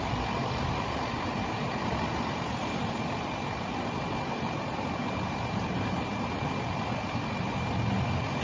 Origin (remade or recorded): recorded